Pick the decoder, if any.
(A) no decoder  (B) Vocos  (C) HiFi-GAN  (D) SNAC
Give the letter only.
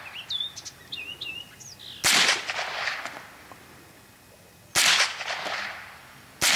A